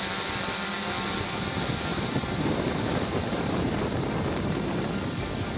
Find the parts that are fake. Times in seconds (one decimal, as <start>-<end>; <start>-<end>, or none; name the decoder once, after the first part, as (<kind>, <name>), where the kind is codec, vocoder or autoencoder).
1.9-4.9 (vocoder, BigVGAN v2)